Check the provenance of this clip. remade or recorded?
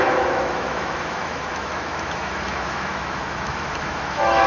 remade